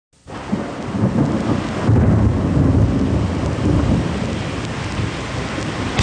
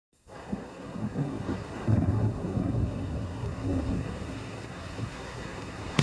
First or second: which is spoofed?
second